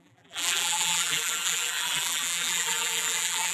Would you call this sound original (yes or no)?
no